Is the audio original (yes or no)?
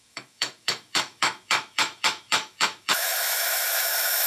no